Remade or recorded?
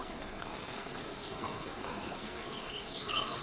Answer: remade